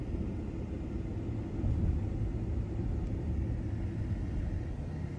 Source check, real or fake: real